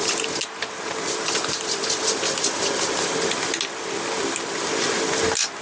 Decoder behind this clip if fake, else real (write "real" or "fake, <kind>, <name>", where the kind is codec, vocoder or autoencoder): real